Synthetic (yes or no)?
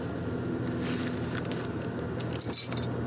no